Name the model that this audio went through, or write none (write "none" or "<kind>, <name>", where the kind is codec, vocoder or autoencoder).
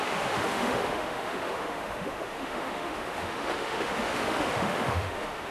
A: autoencoder, DAC-VAE